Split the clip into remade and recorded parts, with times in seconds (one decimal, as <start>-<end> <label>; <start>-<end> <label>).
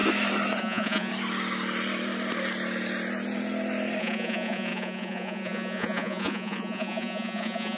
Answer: 0.0-0.6 recorded; 0.6-1.1 remade; 1.1-4.0 recorded; 4.0-7.8 remade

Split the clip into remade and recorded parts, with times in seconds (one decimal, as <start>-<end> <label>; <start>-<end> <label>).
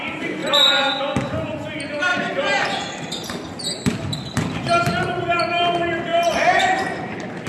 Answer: 0.0-0.4 recorded; 0.4-1.0 remade; 1.0-2.1 recorded; 2.1-4.9 remade; 4.9-6.1 recorded; 6.1-6.6 remade; 6.6-7.5 recorded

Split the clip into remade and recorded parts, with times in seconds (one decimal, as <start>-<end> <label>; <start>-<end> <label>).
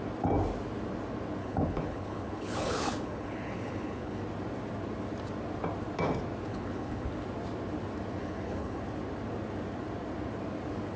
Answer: 0.0-1.4 recorded; 1.4-4.2 remade; 4.2-6.5 recorded; 6.5-7.1 remade; 7.1-8.2 recorded; 8.2-8.8 remade; 8.8-11.0 recorded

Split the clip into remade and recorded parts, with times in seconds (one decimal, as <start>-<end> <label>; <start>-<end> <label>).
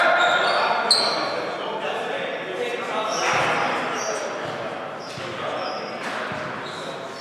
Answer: 0.0-7.2 recorded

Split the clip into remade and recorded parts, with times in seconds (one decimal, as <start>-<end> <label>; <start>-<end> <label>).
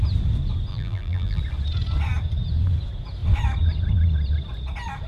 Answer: 0.0-0.7 recorded; 0.7-1.4 remade; 1.4-5.1 recorded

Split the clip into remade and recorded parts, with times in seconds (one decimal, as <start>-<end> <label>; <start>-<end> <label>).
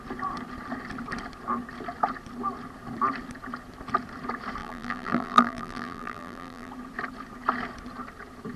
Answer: 0.0-4.6 recorded; 4.6-6.7 remade; 6.7-8.6 recorded